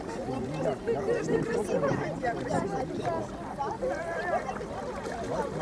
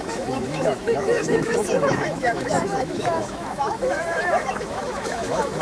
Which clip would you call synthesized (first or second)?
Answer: second